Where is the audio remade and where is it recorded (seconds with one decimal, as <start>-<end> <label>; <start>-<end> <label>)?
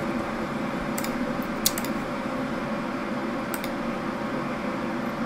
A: 0.0-1.5 remade; 1.5-2.0 recorded; 2.0-2.6 remade; 2.6-5.3 recorded